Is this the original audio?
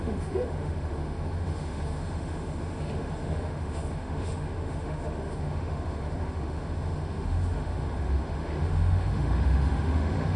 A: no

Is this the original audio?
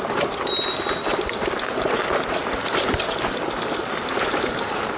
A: yes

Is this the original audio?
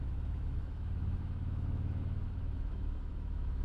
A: no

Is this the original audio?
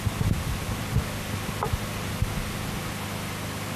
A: yes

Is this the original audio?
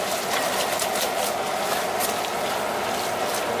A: yes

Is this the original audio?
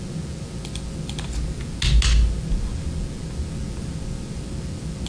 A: yes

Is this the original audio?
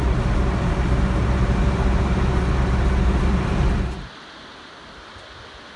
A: yes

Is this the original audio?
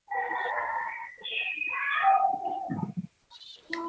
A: yes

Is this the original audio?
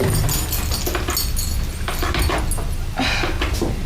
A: yes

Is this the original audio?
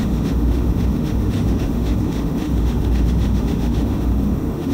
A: no